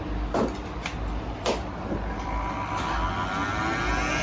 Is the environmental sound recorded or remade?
recorded